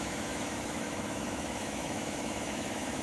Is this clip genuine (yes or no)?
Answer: no